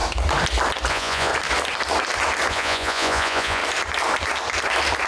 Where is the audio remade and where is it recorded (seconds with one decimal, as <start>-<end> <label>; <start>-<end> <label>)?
0.0-0.9 recorded; 0.9-1.3 remade; 1.3-2.5 recorded; 2.5-3.6 remade; 3.6-5.1 recorded